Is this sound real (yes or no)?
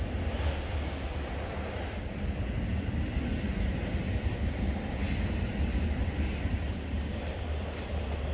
yes